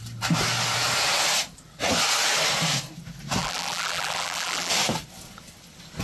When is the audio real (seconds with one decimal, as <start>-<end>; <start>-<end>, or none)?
0.0-3.4; 4.7-6.0